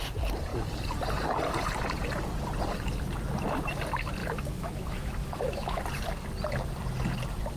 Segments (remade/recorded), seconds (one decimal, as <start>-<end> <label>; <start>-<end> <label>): 0.0-4.2 recorded; 4.2-5.8 remade; 5.8-7.6 recorded